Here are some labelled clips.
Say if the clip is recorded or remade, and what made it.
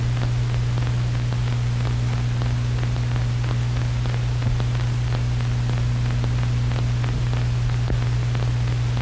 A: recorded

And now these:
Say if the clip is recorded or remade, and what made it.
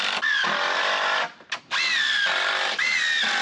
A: recorded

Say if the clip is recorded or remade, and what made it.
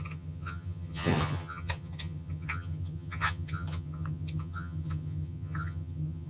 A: remade, vocoder, HiFi-GAN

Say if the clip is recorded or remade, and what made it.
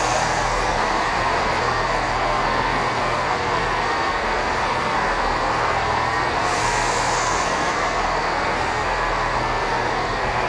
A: remade, codec, SNAC